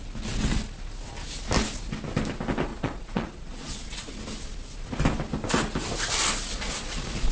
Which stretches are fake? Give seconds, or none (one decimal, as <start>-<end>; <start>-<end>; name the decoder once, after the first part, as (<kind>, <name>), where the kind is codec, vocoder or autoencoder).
2.7-4.1 (vocoder, Vocos); 6.5-7.3